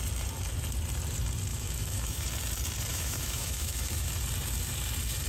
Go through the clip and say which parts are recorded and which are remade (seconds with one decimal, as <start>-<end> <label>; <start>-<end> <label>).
0.0-1.5 recorded; 1.5-2.3 remade; 2.3-2.9 recorded; 2.9-4.1 remade; 4.1-5.3 recorded